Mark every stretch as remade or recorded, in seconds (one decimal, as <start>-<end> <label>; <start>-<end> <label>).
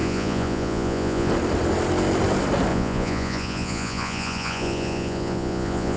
0.0-1.3 remade; 1.3-2.7 recorded; 2.7-6.0 remade